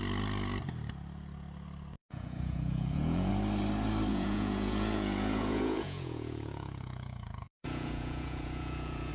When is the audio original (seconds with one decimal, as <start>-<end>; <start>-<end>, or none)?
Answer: 0.0-2.0; 3.3-4.1

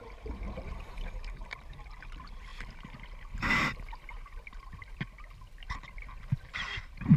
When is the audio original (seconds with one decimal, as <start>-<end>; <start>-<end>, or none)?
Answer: 2.5-6.8

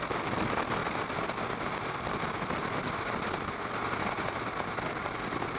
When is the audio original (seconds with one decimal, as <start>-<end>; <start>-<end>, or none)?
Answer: 0.0-5.6

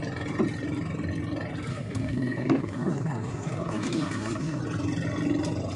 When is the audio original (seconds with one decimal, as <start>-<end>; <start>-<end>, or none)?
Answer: 0.0-1.7; 4.6-5.8

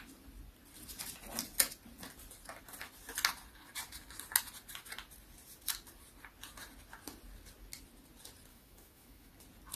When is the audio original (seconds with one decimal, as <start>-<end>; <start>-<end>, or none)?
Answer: 0.0-8.5; 9.3-9.8